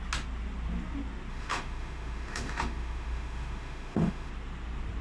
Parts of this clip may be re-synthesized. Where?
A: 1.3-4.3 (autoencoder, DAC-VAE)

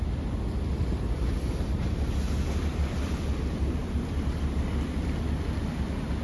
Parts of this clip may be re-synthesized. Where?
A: 0.7-3.3 (vocoder, BigVGAN v2); 3.8-4.7

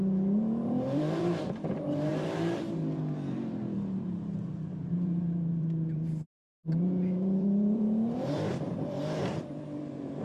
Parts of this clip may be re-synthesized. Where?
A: 0.0-10.2 (vocoder, BigVGAN v2)

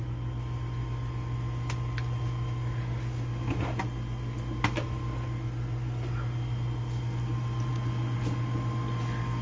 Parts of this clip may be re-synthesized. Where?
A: none

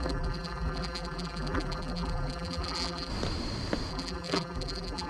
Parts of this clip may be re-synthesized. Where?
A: 0.0-3.1 (vocoder, BigVGAN v2); 3.9-5.1